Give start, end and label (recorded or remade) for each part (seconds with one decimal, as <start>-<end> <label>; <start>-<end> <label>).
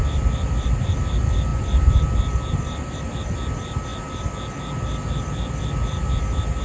0.0-6.6 recorded